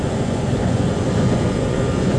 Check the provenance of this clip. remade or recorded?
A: remade